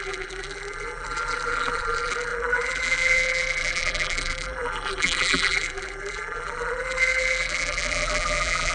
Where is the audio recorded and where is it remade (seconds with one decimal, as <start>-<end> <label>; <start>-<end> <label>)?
0.0-8.7 remade